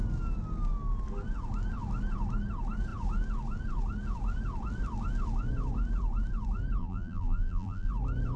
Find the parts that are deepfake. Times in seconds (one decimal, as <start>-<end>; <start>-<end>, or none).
6.8-7.9